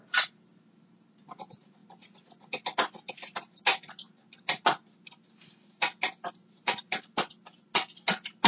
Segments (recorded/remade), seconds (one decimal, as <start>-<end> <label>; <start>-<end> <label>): 0.0-8.5 recorded